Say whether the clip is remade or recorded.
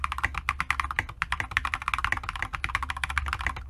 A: recorded